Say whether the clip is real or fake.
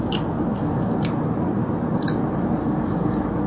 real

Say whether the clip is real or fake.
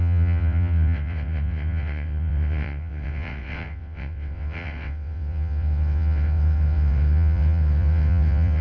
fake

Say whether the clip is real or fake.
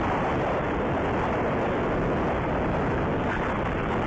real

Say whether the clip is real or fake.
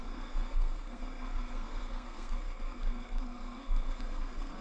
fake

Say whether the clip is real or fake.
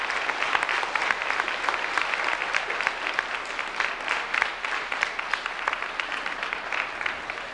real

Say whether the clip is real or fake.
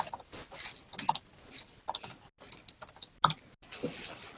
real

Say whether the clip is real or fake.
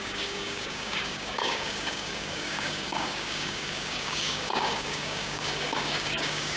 fake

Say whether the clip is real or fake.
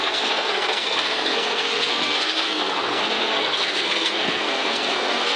fake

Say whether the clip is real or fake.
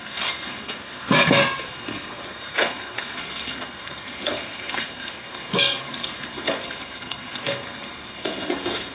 fake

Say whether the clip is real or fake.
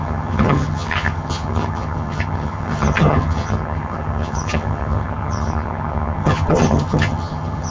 fake